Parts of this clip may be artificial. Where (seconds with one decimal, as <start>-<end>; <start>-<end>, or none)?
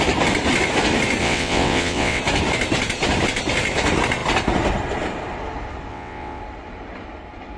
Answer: 1.2-2.2; 5.9-6.4